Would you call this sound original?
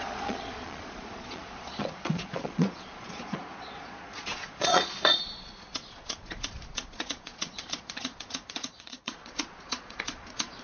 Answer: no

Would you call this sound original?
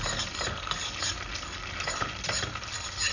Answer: yes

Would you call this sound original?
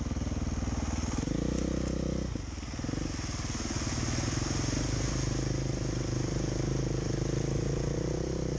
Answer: yes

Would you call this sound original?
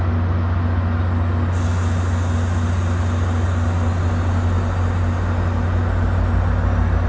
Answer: yes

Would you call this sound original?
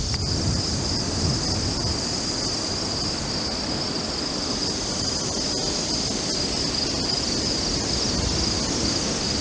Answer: yes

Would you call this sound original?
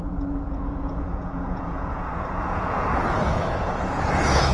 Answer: no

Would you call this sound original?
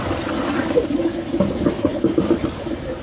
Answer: yes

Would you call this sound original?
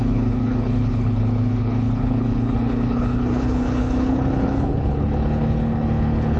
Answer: no